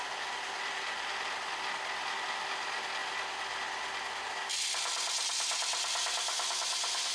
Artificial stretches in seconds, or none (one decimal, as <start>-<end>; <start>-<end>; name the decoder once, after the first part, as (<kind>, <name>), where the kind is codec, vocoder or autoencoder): none